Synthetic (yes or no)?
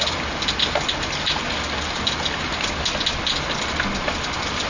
no